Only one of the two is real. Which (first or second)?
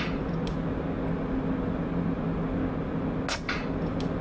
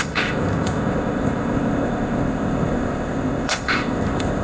first